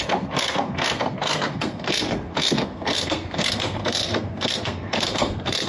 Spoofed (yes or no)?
yes